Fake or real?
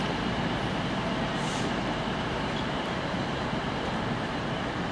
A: fake